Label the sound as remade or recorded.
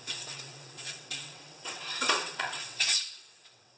remade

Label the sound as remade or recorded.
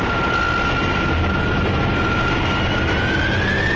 recorded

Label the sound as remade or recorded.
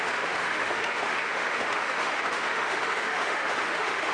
remade